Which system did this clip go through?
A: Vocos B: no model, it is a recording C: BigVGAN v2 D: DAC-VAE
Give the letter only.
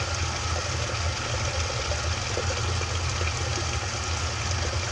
B